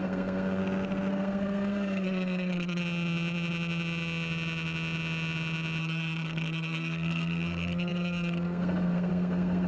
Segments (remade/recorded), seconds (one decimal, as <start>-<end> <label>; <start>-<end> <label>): 0.0-0.6 remade; 0.6-1.1 recorded; 1.1-2.8 remade; 2.8-5.8 recorded; 5.8-9.7 remade